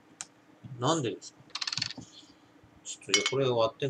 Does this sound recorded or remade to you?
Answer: recorded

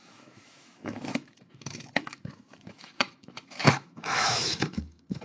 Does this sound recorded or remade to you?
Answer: remade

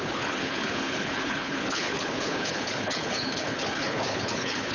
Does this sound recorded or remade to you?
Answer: remade